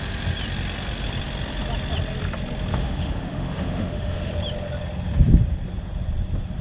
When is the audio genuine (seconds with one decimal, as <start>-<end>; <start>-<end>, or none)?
0.0-2.7; 4.3-6.6

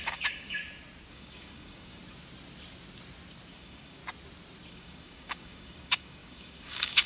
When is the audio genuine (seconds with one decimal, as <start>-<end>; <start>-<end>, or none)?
0.6-1.1; 2.0-3.5; 4.0-4.7

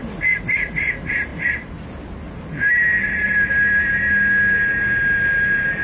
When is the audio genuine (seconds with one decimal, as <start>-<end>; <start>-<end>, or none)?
0.0-5.8

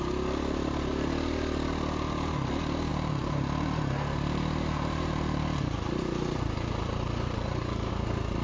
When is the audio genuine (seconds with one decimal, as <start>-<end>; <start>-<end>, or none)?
0.0-2.9; 7.9-8.4

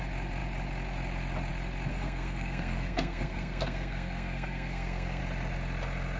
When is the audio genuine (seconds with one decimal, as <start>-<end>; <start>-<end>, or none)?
0.0-1.9; 5.2-6.2